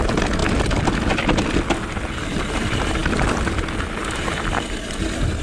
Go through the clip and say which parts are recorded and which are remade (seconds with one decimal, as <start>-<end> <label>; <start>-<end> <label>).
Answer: 0.0-5.4 recorded